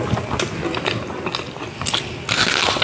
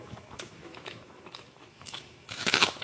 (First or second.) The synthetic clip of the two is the second